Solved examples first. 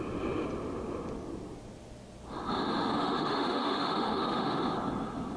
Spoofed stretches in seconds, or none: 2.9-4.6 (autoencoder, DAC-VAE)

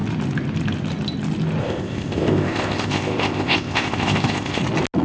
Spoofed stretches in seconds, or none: 1.6-4.6 (codec, ZipCodec)